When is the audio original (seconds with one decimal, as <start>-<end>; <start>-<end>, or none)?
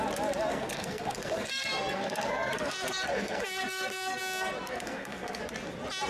0.0-0.5; 4.2-4.7; 5.4-6.1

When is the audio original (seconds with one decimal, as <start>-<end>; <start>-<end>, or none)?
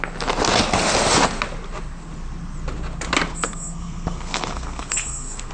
0.0-3.3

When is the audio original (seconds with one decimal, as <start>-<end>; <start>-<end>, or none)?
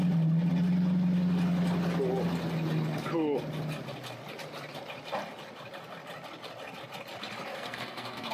0.0-7.5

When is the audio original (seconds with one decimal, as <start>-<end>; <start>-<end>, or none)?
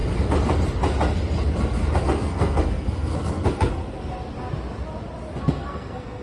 0.0-2.0; 3.8-5.4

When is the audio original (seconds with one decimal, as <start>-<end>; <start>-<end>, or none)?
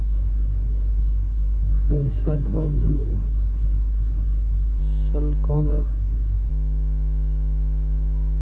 4.8-5.5; 6.5-8.4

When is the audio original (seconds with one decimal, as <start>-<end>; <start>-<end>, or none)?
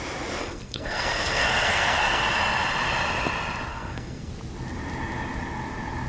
0.0-0.4; 2.2-3.7; 4.3-6.1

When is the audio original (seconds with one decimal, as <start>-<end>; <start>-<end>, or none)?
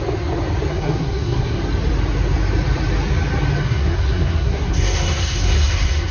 0.0-0.7; 1.6-3.6